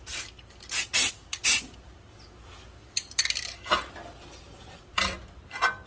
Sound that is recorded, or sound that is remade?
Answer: recorded